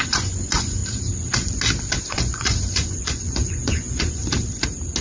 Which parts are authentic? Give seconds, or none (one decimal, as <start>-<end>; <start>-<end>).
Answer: 0.8-2.0; 4.2-5.0